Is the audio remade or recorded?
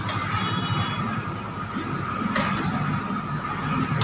recorded